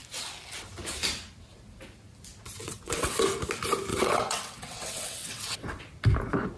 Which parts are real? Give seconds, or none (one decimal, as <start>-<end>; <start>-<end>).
0.0-2.6; 3.2-3.9; 5.8-6.6